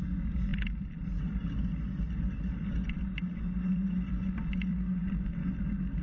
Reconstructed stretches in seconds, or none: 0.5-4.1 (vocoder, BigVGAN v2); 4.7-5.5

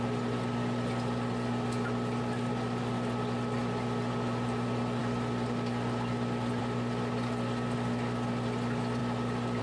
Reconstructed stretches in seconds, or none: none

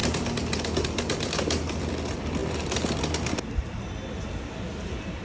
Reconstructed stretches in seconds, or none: none

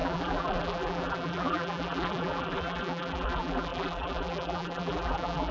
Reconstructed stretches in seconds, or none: 0.0-5.5 (vocoder, BigVGAN v2)

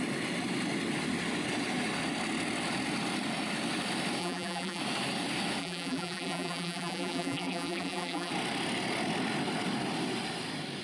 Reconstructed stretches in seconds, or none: 4.2-4.8 (vocoder, BigVGAN v2); 5.6-8.3

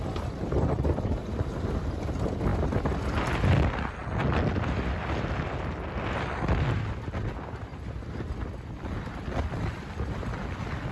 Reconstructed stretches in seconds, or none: none

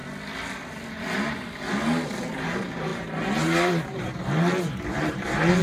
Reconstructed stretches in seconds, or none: 1.7-5.6 (vocoder, BigVGAN v2)

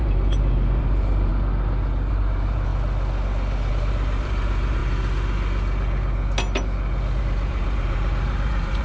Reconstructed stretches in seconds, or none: 0.0-1.3 (vocoder, BigVGAN v2); 2.1-2.7; 3.7-4.8; 7.2-8.8